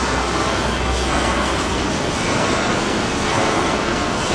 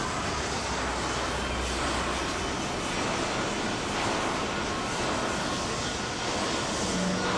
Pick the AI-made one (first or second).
first